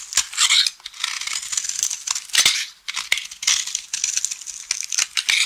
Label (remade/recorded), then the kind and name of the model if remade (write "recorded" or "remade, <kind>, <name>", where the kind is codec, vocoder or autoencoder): recorded